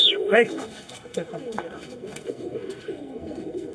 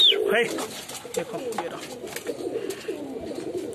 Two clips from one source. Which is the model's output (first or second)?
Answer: first